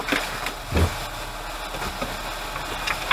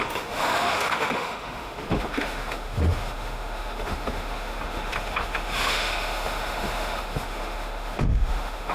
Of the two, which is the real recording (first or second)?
first